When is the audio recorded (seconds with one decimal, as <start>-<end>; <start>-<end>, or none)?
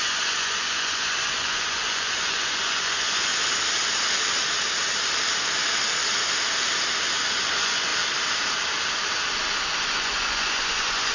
3.3-7.4; 7.9-9.8